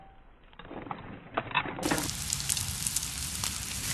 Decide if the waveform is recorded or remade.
recorded